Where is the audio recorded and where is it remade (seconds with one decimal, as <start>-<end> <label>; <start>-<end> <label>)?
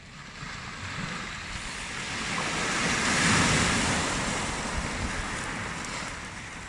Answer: 0.0-6.7 recorded